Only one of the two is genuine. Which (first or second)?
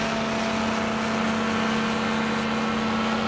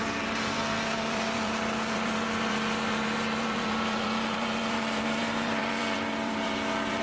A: first